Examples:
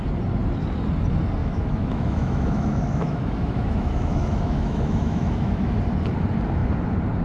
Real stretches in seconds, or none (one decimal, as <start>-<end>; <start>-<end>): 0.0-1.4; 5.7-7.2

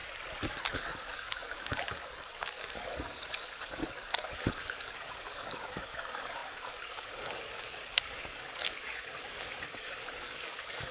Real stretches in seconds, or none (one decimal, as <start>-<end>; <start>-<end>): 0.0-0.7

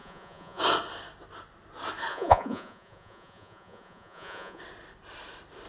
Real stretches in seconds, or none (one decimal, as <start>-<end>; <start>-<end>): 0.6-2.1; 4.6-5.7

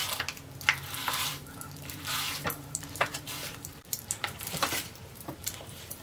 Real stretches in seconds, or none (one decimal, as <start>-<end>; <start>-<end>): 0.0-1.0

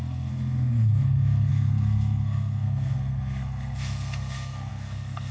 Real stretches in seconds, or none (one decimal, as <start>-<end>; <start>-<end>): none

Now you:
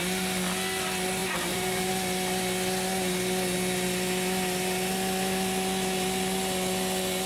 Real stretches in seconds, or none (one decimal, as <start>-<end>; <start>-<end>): 0.0-1.2; 1.9-7.3